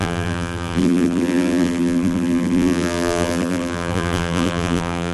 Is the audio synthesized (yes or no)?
yes